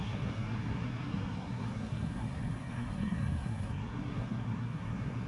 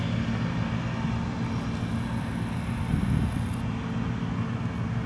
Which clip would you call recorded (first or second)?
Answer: second